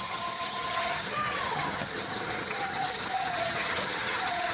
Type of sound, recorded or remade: remade